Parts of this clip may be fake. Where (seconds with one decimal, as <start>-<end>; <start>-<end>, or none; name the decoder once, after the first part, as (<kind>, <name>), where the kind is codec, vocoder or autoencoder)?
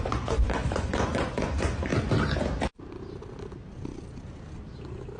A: 0.0-1.9 (vocoder, Vocos)